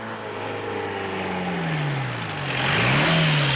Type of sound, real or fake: real